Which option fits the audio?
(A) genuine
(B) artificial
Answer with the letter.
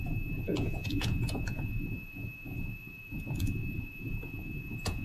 B